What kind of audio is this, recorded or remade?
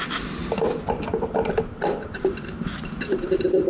recorded